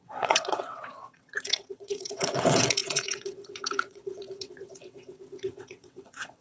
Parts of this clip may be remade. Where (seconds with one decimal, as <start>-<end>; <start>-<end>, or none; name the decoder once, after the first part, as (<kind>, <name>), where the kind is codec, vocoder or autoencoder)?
0.0-6.4 (vocoder, WaveNeXt)